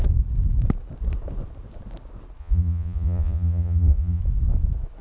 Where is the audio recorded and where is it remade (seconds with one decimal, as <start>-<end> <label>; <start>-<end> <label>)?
0.0-2.4 recorded; 2.4-4.2 remade; 4.2-5.0 recorded